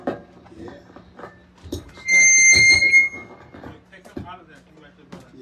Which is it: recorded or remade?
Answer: recorded